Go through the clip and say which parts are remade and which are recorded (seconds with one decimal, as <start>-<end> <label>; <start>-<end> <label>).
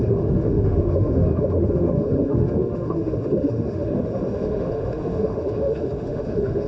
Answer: 0.0-6.7 remade